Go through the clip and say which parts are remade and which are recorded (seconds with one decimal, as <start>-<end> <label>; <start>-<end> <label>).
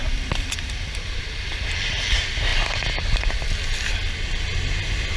0.0-5.2 recorded